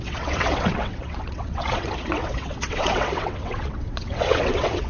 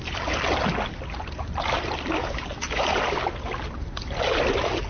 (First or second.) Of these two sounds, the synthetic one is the first